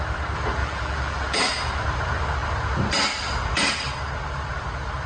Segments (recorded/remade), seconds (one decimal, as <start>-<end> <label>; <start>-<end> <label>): 0.0-0.6 recorded; 0.6-1.6 remade; 1.6-5.1 recorded

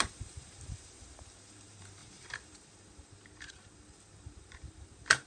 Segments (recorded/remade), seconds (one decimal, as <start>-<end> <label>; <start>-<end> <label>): 0.0-5.3 remade

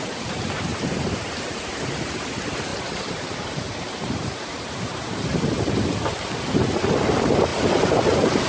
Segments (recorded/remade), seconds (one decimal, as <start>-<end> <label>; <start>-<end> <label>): 0.0-0.7 recorded; 0.7-1.6 remade; 1.6-2.7 recorded; 2.7-5.2 remade; 5.2-7.5 recorded; 7.5-8.5 remade